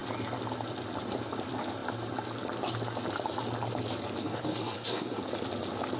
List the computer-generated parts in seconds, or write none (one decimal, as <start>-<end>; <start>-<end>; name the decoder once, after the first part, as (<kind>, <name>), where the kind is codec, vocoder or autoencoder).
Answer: 4.2-5.2 (codec, SNAC)